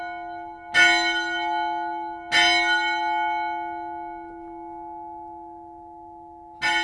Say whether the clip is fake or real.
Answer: real